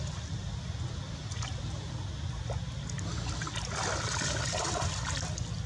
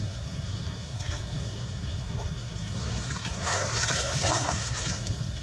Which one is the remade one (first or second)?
second